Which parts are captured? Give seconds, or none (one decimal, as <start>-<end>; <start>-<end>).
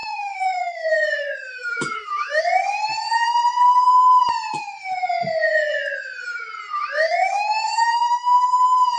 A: 2.4-7.1; 8.4-9.0